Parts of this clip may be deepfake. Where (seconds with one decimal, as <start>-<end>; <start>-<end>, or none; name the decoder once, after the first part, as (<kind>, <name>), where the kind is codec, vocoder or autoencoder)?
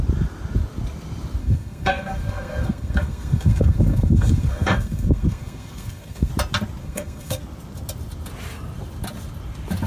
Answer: 1.4-6.3 (codec, SNAC); 6.8-7.4